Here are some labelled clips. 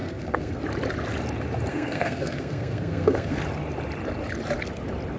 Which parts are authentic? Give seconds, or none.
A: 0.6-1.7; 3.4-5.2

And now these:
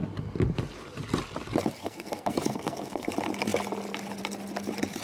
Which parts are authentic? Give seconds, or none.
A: 0.0-1.8; 3.1-5.0

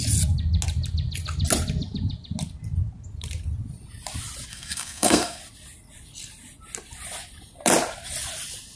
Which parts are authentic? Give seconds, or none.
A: 0.0-4.5; 5.4-8.8

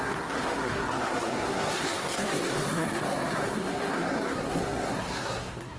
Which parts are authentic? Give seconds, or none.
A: none

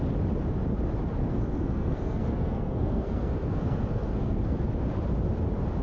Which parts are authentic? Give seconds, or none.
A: 0.0-1.2; 4.7-5.8

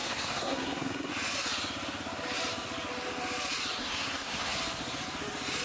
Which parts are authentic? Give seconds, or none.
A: 1.1-3.8; 4.6-5.6